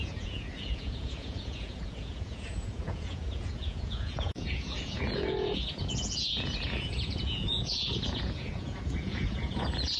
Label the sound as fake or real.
fake